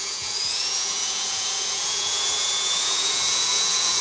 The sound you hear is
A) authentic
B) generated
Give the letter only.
B